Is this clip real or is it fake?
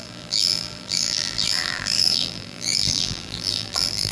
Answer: fake